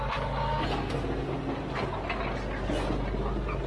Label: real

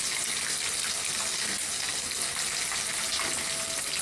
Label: real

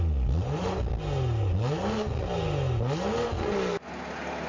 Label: real